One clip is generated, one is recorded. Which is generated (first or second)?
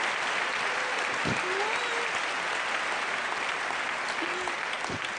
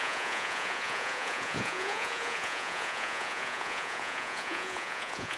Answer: second